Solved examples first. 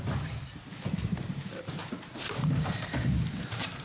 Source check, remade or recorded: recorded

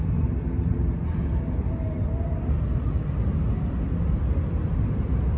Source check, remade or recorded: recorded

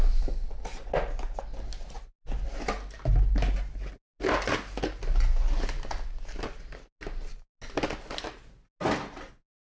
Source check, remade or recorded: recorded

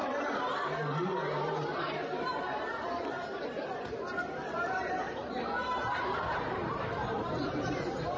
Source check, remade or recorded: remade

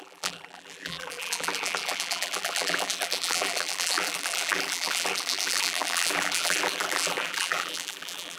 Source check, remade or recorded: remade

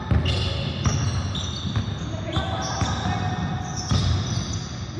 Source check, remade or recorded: recorded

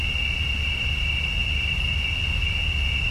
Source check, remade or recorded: recorded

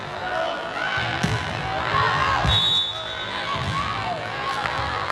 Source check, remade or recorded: remade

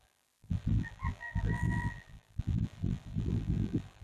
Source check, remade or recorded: remade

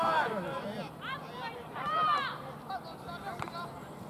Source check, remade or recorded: remade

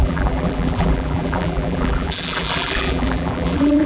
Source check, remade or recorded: remade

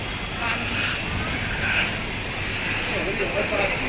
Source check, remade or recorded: recorded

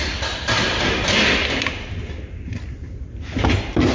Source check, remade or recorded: recorded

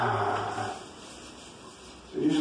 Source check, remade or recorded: remade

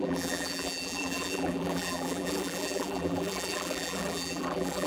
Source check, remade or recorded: remade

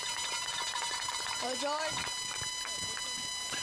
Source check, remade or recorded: remade